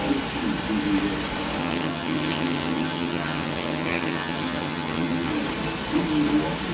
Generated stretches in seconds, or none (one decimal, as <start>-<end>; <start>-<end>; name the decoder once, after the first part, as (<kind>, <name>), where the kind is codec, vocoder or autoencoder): 1.6-5.3 (vocoder, HiFi-GAN)

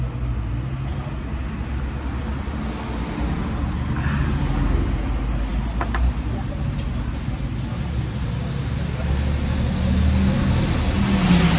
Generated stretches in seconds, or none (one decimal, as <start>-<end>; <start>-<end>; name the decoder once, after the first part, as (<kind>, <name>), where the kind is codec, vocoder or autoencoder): none

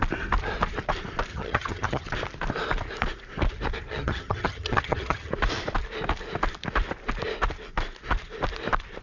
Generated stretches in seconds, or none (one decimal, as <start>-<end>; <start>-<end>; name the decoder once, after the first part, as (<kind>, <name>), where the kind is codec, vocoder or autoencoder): 1.3-2.1 (vocoder, HiFi-GAN); 3.9-5.3

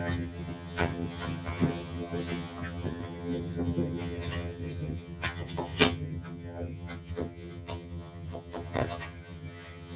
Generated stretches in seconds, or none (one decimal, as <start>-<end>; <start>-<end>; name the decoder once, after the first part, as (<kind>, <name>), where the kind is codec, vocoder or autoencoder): 0.0-10.0 (vocoder, HiFi-GAN)

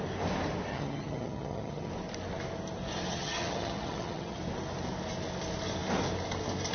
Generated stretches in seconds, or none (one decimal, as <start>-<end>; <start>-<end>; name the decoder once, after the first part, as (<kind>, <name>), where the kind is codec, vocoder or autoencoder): 0.7-1.9 (vocoder, HiFi-GAN); 3.1-4.4

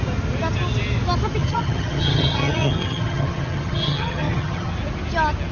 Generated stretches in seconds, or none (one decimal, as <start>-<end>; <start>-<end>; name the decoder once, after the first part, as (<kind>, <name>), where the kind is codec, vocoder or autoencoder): 1.4-4.7 (vocoder, HiFi-GAN)

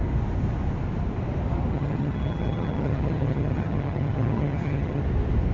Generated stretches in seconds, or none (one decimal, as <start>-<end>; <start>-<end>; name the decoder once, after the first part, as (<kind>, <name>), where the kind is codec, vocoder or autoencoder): 1.7-5.0 (vocoder, HiFi-GAN)